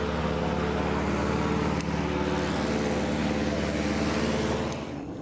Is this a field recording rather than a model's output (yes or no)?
yes